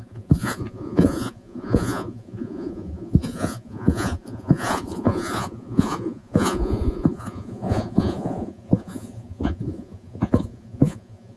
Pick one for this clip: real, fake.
fake